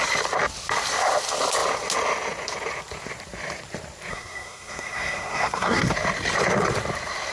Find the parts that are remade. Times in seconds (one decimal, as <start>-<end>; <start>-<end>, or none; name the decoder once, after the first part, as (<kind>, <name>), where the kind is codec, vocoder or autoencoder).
4.1-5.9 (codec, SNAC)